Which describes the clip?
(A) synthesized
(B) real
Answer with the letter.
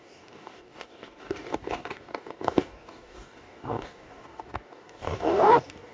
A